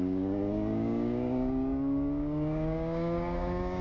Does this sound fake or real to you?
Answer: fake